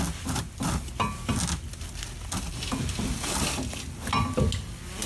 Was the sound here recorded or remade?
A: recorded